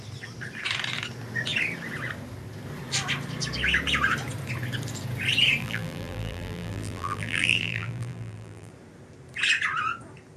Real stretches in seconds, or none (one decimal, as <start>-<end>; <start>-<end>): 0.0-5.6; 8.7-10.4